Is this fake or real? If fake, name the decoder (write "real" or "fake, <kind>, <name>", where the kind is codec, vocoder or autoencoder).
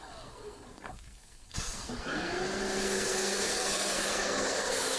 fake, codec, SNAC